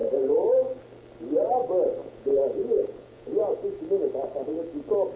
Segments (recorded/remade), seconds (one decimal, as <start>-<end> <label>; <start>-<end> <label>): 0.0-2.0 recorded; 2.0-3.8 remade; 3.8-5.2 recorded